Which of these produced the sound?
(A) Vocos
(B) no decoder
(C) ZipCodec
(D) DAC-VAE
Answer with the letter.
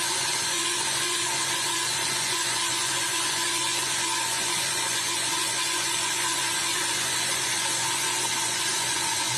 A